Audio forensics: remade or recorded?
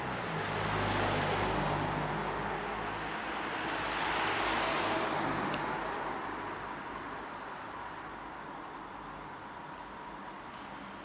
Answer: recorded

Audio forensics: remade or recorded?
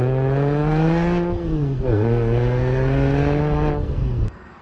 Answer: remade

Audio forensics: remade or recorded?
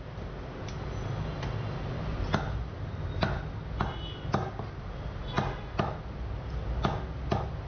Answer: recorded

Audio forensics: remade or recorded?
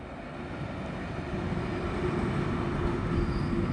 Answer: recorded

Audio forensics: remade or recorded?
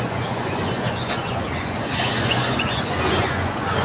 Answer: remade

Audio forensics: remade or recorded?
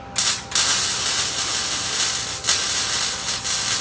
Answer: recorded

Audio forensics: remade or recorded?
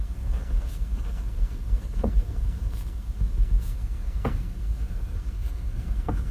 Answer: remade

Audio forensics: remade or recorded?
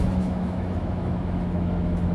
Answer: remade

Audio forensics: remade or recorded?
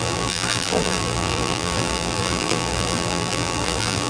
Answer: remade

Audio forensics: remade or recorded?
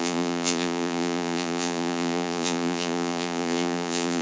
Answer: remade